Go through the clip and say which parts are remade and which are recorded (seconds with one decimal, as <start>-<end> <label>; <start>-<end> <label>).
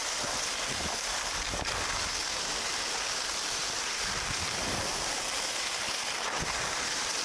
0.0-7.2 recorded